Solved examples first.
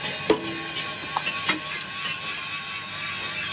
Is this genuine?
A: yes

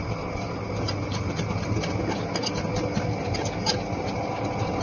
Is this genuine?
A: yes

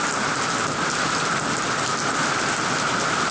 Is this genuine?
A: yes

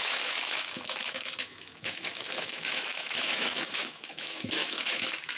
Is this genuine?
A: no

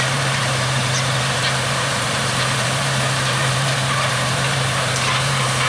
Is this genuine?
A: no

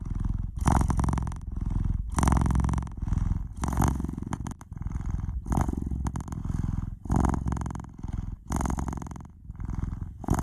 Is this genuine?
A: yes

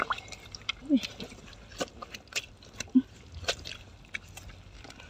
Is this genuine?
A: yes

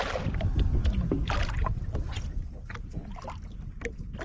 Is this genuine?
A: yes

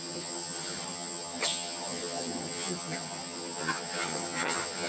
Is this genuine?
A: no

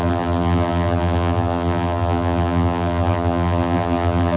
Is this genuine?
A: no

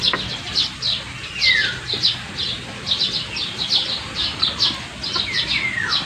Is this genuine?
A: yes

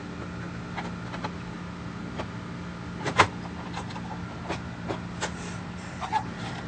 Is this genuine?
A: yes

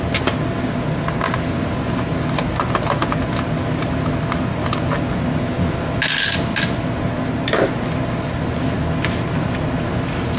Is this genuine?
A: yes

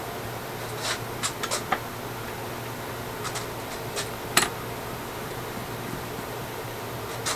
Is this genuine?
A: yes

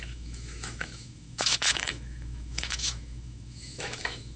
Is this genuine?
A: no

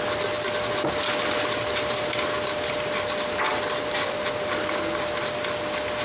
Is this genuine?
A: yes